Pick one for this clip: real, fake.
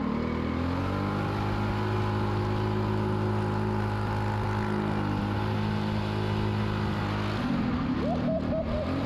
real